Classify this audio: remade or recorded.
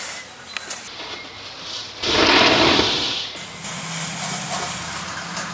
recorded